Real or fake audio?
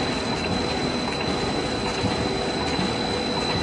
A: real